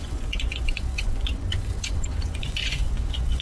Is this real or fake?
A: fake